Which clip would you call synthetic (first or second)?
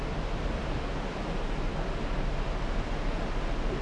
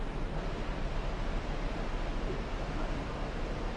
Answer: second